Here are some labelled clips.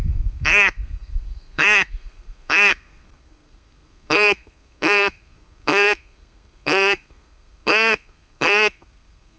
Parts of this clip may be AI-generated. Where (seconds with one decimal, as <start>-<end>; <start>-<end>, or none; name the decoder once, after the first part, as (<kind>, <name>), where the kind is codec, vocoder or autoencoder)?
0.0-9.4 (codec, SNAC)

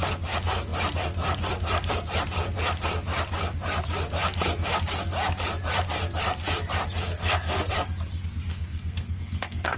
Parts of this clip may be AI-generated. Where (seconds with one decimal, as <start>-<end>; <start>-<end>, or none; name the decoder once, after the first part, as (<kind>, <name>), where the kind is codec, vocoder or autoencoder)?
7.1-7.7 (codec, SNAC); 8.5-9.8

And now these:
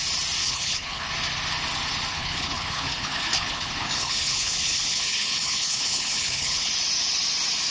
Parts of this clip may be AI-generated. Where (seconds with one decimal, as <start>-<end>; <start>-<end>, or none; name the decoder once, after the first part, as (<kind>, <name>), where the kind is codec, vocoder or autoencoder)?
0.4-1.1 (codec, HILCodec); 2.1-6.7

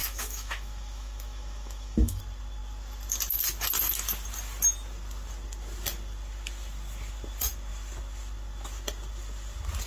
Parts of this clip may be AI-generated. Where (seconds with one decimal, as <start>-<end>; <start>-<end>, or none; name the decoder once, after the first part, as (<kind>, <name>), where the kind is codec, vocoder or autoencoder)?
0.0-2.2 (autoencoder, DAC-VAE)

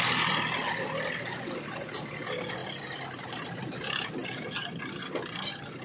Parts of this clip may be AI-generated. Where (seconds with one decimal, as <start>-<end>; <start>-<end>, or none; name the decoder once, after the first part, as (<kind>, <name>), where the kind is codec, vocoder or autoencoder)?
2.6-3.6 (vocoder, BigVGAN v2)

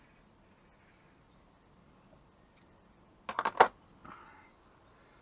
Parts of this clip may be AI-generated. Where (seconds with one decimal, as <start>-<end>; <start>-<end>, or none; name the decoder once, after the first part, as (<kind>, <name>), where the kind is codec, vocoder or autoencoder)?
none

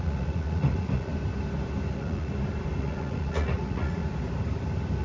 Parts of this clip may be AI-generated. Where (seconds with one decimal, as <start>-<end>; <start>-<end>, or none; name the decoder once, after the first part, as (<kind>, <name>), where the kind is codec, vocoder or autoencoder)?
0.0-1.1 (vocoder, Vocos); 1.9-2.3; 2.8-4.0